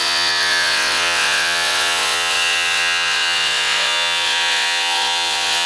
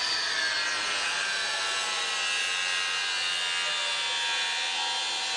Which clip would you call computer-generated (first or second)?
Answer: first